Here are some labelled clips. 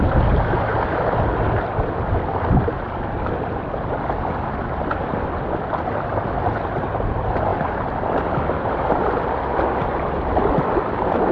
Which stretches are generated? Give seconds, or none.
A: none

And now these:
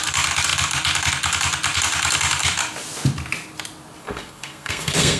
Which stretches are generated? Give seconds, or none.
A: 4.0-5.2 (codec, SNAC)

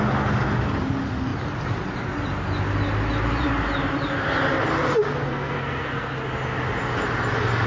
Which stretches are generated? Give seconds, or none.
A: 5.3-6.1 (codec, SNAC)

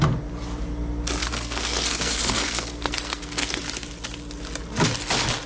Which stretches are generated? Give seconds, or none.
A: 1.2-3.6 (codec, SNAC)

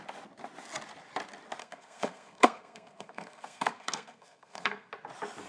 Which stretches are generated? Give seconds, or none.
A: 1.6-4.9 (codec, SNAC)

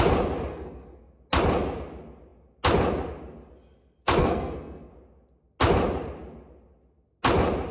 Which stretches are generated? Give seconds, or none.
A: 0.5-1.2 (codec, SNAC); 4.2-4.9

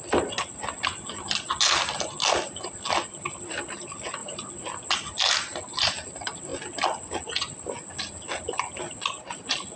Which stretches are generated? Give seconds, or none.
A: none

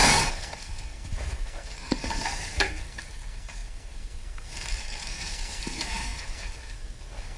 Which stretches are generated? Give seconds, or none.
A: 0.0-7.4 (codec, SNAC)